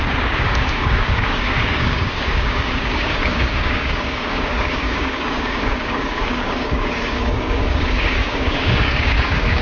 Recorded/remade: remade